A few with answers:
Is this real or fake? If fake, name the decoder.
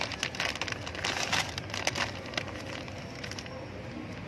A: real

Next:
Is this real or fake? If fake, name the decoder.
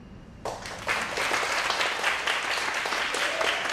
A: real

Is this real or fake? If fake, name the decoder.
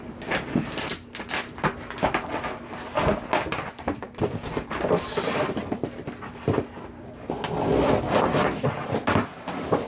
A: real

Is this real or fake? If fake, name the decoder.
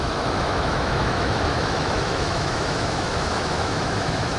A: fake, autoencoder, DAC-VAE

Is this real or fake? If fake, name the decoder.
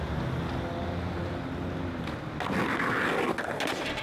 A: real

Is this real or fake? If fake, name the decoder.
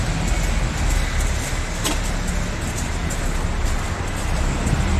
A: real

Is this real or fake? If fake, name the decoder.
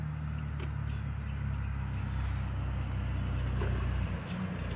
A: real